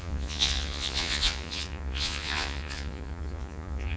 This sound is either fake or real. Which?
fake